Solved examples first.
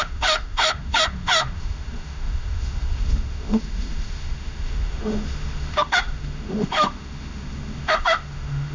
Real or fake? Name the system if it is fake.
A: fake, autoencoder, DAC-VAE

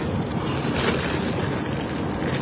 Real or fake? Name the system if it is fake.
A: real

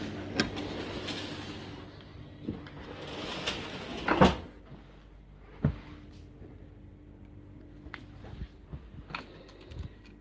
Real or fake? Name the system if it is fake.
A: real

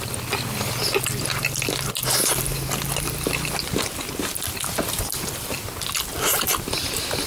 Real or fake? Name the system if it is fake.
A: real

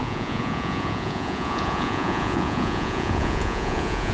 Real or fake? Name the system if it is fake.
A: fake, vocoder, Vocos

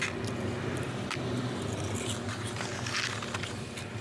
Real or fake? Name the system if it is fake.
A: real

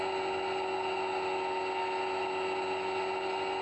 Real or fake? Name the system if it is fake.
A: real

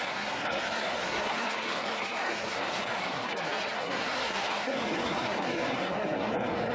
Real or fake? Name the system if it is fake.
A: fake, codec, SNAC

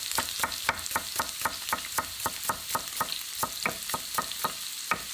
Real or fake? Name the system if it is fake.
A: real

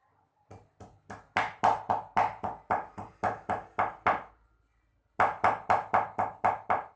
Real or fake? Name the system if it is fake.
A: real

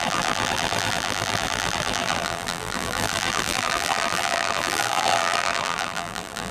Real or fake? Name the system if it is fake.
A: fake, vocoder, BigVGAN v2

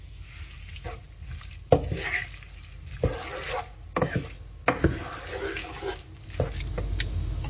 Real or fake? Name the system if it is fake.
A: real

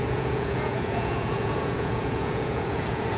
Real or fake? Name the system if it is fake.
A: fake, vocoder, Vocos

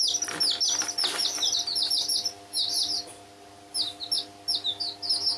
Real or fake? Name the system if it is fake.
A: real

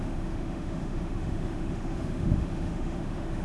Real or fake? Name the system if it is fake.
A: fake, autoencoder, DAC-VAE